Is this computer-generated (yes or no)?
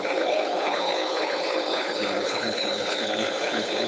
yes